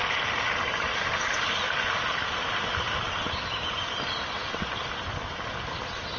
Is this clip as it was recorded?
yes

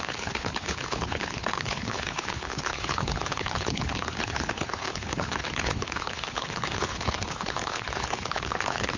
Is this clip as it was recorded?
no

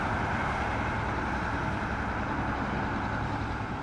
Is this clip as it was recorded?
yes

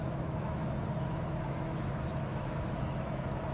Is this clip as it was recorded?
no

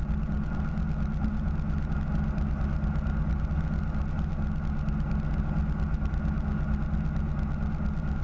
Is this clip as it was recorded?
yes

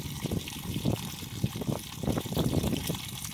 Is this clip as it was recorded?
yes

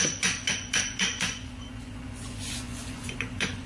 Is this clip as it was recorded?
no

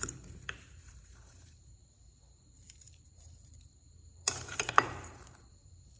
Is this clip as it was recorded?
no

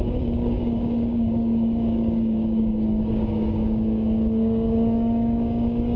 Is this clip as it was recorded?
no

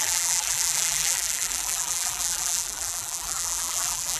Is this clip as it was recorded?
no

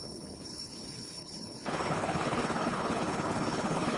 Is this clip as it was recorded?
no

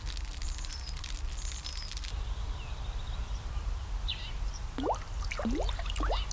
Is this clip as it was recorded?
yes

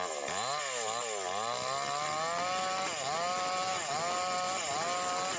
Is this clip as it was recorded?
yes